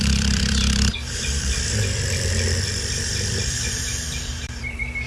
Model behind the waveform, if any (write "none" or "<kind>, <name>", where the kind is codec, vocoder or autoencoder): vocoder, BigVGAN v2